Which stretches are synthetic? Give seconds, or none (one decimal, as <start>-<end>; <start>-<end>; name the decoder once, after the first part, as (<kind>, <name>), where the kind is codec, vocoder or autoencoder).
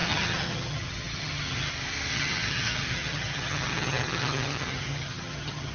0.0-1.7 (vocoder, HiFi-GAN); 2.1-5.7